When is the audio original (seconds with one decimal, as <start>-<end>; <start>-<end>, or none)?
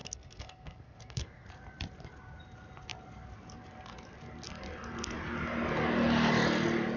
1.5-7.0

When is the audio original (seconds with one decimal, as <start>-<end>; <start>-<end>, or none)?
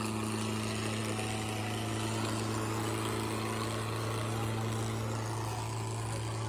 0.0-6.5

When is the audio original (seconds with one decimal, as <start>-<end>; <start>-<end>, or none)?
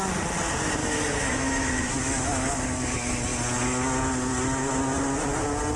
0.0-0.8; 2.9-5.8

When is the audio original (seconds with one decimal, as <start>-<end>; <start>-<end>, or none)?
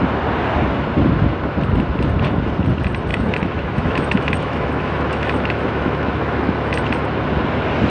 0.0-3.1; 6.8-7.9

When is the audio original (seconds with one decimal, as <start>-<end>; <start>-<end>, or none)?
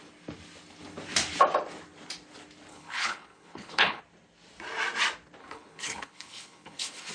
0.0-2.7; 4.0-5.4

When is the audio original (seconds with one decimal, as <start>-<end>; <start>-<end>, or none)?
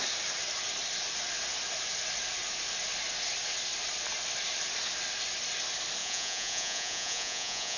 0.0-6.0